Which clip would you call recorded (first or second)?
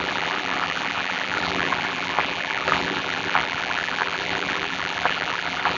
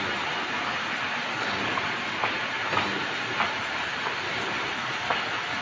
second